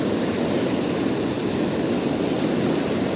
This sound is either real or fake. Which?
real